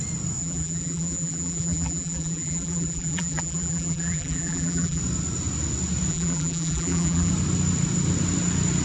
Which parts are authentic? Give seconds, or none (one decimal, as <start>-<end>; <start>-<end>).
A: 0.0-0.4; 5.0-6.1; 7.3-8.8